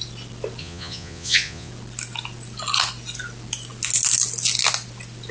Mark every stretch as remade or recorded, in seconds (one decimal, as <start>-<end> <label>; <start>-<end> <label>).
0.0-0.6 recorded; 0.6-1.7 remade; 1.7-5.3 recorded